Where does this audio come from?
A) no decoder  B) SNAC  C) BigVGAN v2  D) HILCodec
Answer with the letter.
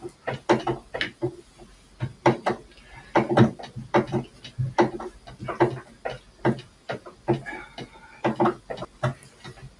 A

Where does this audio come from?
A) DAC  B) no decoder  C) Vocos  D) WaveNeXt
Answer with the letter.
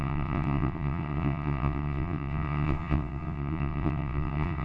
D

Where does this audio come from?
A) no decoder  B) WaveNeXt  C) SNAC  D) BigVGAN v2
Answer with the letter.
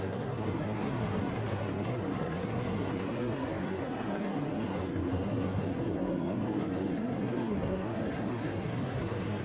C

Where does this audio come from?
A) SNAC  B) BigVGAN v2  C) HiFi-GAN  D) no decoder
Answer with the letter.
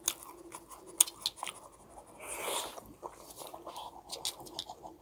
D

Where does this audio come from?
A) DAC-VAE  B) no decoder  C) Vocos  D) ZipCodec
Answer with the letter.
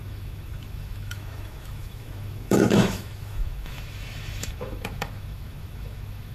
A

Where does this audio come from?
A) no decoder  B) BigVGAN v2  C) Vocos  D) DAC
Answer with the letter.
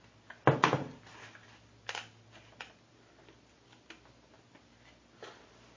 A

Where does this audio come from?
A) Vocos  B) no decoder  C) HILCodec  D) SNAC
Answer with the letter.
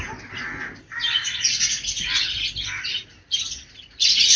B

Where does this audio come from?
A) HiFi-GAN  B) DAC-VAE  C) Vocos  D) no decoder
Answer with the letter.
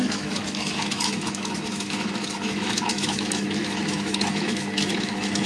B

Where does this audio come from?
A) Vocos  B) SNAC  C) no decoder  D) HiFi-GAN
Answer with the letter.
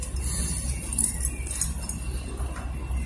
C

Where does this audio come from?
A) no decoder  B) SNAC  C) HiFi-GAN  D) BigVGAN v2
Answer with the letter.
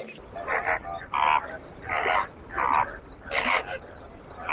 A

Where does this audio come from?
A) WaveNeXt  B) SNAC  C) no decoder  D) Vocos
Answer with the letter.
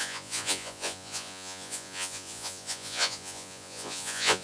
D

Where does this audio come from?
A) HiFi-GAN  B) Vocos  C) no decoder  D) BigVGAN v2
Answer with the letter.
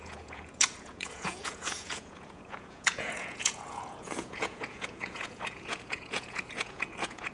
B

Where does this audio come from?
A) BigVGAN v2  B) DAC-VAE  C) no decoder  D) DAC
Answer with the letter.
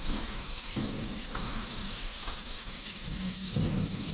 D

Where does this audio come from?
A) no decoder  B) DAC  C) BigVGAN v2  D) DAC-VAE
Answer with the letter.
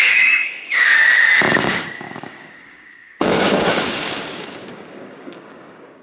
B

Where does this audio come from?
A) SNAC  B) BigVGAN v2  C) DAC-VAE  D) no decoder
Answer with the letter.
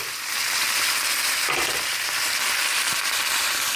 B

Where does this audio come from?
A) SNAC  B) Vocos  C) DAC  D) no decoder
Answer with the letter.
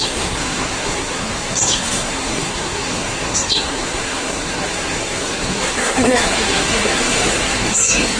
A